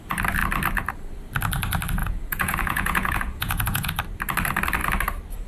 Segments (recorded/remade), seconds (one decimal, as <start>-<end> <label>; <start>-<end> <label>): 0.0-2.0 recorded; 2.0-3.9 remade; 3.9-5.5 recorded